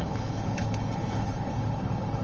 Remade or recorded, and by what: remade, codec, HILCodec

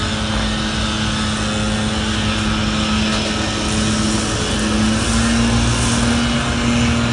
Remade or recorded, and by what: recorded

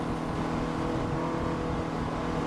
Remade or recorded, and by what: recorded